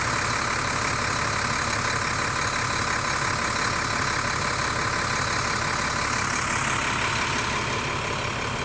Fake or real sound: real